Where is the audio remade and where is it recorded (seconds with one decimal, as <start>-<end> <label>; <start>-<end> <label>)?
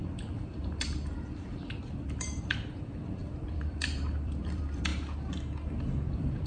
0.0-4.9 remade; 4.9-6.1 recorded; 6.1-6.5 remade